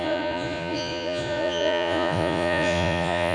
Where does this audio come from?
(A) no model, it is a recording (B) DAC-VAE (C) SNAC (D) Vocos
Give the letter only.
D